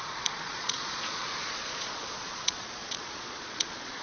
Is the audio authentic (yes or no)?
no